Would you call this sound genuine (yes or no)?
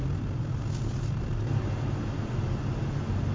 yes